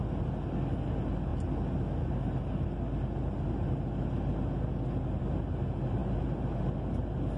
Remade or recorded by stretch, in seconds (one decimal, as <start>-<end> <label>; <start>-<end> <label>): 0.0-7.4 recorded